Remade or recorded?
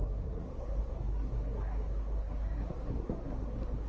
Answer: remade